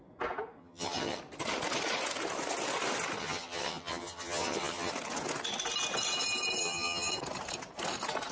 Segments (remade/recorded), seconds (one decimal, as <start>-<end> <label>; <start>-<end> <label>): 0.0-0.6 recorded; 0.6-1.2 remade; 1.2-3.2 recorded; 3.2-4.9 remade; 4.9-6.6 recorded; 6.6-7.1 remade; 7.1-8.3 recorded